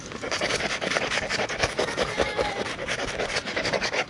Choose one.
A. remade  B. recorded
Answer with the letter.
A